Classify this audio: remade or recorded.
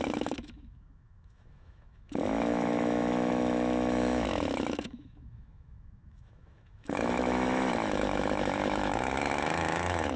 remade